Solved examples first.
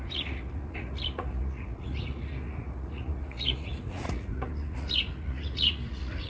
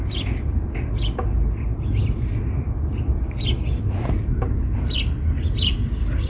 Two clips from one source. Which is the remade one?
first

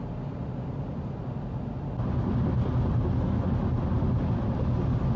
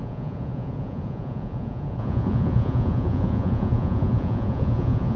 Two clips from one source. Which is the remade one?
second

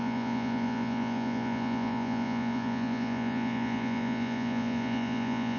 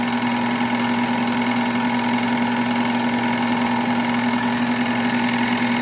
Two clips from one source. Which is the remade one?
first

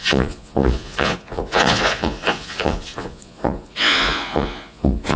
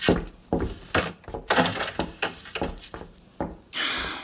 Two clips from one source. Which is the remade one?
first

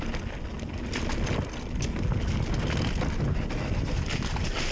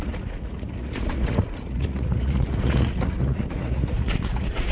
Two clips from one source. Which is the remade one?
second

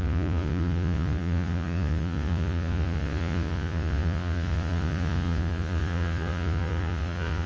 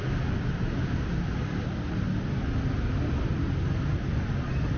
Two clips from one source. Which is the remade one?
first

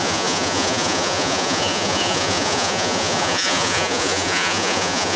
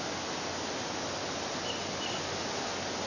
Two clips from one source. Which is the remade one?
first